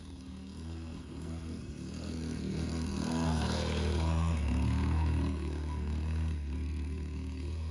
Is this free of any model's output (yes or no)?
no